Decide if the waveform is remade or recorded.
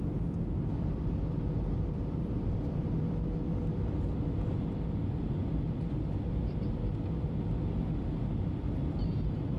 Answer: recorded